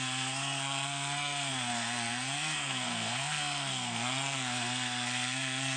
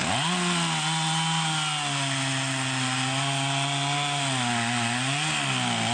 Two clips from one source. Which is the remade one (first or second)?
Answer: first